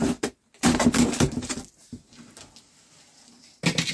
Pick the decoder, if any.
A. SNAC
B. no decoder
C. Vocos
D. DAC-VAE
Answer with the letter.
B